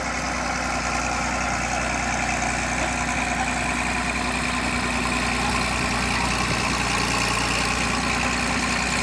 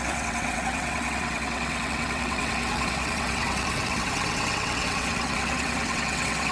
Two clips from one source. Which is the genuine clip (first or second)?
first